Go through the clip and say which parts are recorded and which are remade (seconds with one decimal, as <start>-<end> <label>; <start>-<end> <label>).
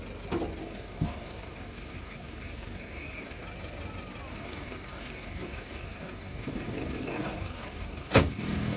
0.0-0.6 recorded; 0.6-3.4 remade; 3.4-4.3 recorded; 4.3-8.8 remade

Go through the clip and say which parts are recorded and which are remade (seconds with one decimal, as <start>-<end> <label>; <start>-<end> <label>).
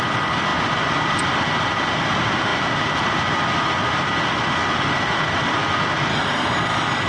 0.0-6.1 recorded; 6.1-7.1 remade